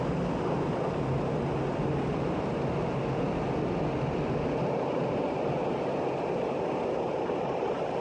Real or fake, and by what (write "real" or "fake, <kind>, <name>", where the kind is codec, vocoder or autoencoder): real